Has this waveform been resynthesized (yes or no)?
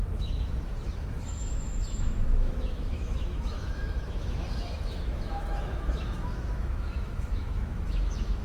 yes